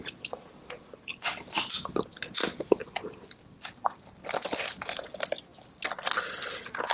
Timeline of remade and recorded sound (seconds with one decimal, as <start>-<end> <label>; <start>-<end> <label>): 0.0-6.9 recorded